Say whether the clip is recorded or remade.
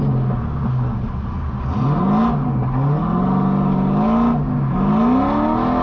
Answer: recorded